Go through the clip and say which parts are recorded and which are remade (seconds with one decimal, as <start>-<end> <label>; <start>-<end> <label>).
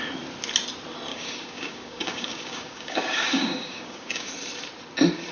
0.0-1.1 recorded; 1.1-4.3 remade; 4.3-5.3 recorded